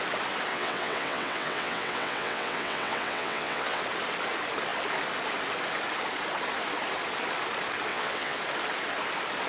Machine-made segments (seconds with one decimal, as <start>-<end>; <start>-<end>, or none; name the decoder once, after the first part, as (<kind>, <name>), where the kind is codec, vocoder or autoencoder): 0.5-3.8 (vocoder, WaveNeXt); 7.9-8.4